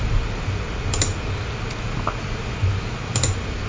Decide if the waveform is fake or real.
real